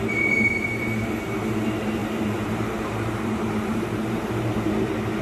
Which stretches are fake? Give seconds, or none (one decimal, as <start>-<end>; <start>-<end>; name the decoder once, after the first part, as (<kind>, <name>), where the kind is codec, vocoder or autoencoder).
2.0-5.2 (vocoder, BigVGAN v2)